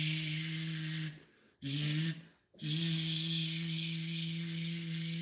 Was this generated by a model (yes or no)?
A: no